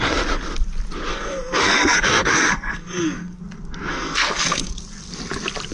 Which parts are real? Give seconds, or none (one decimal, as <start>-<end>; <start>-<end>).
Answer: 0.0-1.1; 3.4-3.9; 4.7-5.7